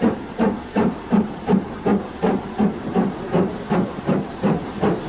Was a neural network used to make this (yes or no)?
yes